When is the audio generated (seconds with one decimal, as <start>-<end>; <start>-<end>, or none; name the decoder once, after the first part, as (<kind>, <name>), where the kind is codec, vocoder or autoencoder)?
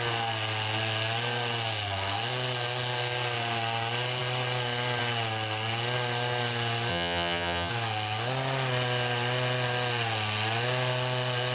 6.9-7.7 (vocoder, HiFi-GAN)